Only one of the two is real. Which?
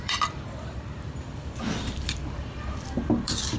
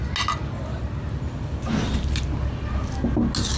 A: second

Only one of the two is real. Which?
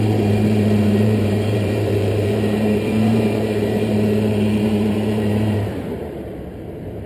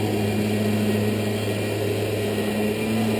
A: second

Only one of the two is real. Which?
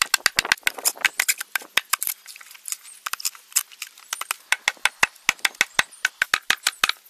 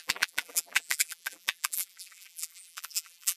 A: first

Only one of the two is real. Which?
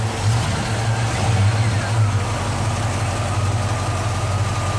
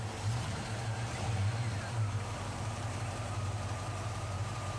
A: first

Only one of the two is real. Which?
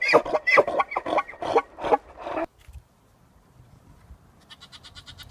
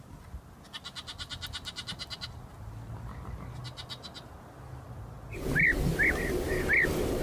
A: second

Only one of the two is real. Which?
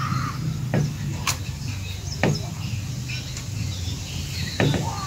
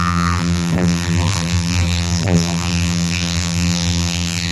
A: first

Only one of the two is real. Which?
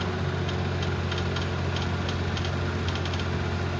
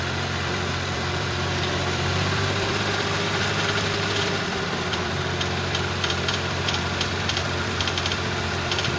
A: first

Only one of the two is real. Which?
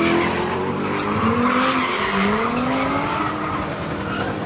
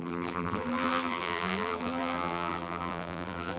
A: first